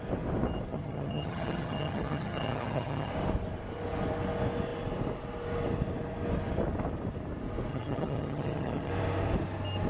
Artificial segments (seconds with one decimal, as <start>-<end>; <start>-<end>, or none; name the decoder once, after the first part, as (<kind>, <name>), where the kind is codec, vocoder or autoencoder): 0.7-3.1 (vocoder, HiFi-GAN); 7.7-8.9